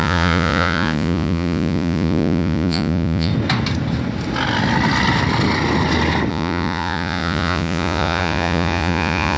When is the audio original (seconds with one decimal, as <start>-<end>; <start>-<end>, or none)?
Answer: 3.3-6.3